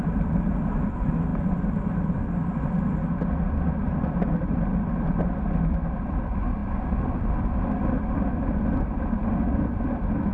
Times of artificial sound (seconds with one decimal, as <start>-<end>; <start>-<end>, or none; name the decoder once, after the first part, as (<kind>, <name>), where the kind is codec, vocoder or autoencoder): none